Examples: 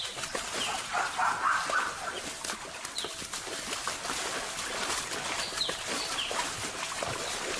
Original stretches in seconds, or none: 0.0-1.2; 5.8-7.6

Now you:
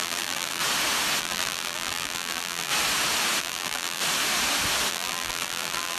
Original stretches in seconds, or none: 0.6-1.2; 2.7-3.4; 4.0-4.9

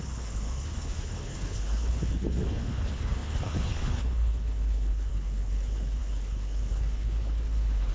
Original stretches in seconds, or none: none

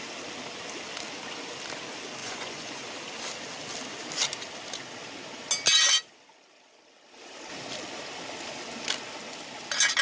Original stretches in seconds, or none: 0.0-2.2; 2.9-10.0